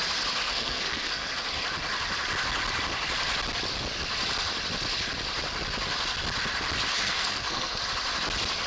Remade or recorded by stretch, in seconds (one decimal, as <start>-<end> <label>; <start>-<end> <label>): 0.0-0.4 recorded; 0.4-1.3 remade; 1.3-6.9 recorded; 6.9-7.8 remade; 7.8-8.7 recorded